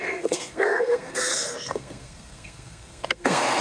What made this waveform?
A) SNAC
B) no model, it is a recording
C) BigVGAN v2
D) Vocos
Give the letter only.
A